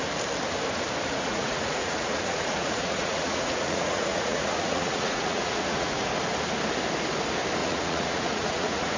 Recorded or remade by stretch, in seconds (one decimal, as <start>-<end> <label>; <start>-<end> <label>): 0.0-1.1 recorded; 1.1-6.1 remade; 6.1-7.6 recorded; 7.6-9.0 remade